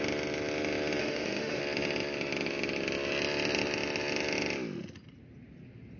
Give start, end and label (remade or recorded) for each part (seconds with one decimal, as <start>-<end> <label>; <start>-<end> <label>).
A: 0.0-1.0 recorded; 1.0-1.6 remade; 1.6-6.0 recorded